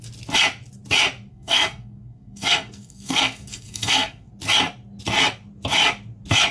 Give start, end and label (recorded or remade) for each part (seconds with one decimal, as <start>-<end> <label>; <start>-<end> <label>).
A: 0.0-1.3 recorded; 1.3-4.3 remade; 4.3-6.5 recorded